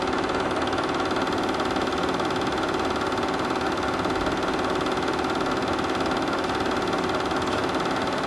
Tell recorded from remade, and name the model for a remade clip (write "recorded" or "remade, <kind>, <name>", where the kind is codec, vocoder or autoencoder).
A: recorded